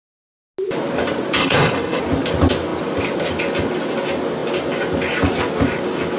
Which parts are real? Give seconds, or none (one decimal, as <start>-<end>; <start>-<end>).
0.0-1.4; 2.0-6.2